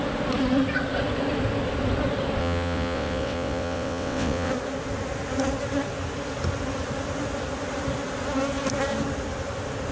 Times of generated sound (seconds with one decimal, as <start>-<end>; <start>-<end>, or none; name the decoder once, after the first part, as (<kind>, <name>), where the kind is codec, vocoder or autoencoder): 2.4-4.5 (vocoder, WaveNeXt)